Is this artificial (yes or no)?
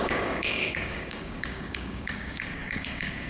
yes